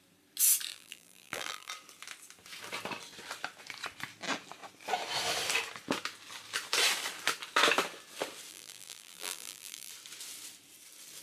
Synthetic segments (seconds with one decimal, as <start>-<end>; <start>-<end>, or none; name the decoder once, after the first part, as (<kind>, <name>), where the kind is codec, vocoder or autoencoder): 0.7-1.7 (vocoder, BigVGAN v2); 8.5-9.9